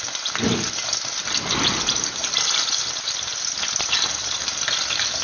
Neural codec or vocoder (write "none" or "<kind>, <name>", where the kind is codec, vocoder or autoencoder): none